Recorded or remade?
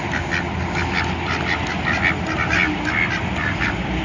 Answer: recorded